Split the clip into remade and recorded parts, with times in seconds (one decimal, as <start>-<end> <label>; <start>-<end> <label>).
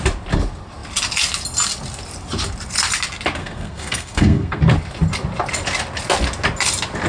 0.0-3.4 recorded; 3.4-4.6 remade; 4.6-7.1 recorded